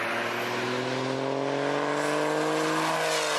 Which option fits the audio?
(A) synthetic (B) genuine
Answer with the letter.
B